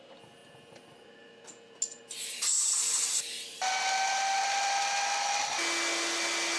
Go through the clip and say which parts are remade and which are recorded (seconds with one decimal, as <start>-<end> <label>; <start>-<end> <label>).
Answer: 0.0-6.6 recorded